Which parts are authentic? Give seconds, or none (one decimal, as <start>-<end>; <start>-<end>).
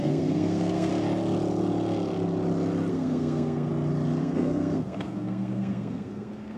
0.9-2.9; 3.7-4.2